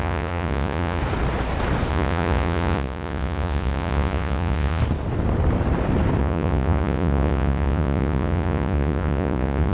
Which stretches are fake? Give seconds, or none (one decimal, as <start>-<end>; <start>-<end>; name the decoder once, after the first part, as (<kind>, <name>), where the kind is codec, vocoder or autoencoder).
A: 0.0-1.0 (vocoder, Vocos); 1.9-4.8; 6.2-9.7